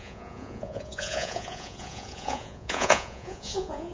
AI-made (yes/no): yes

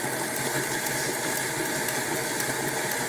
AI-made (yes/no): no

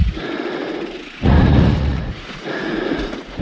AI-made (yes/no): yes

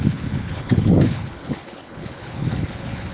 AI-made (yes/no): yes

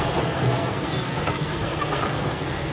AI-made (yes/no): yes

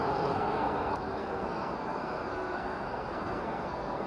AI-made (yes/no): yes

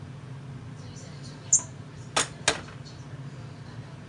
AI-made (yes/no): no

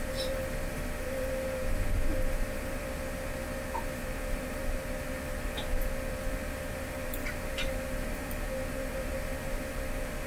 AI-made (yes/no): yes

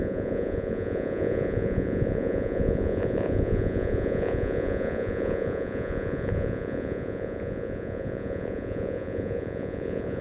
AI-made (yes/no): yes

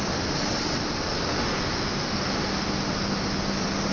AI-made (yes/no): no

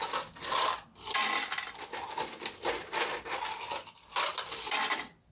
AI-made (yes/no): no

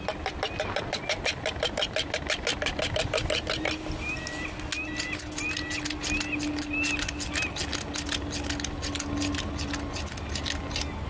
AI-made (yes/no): no